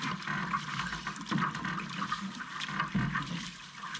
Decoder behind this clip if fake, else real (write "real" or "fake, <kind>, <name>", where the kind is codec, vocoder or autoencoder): real